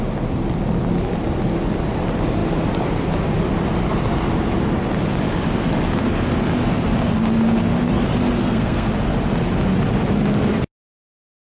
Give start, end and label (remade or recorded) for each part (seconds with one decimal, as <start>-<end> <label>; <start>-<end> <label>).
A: 0.0-8.4 recorded; 8.4-8.9 remade; 8.9-11.5 recorded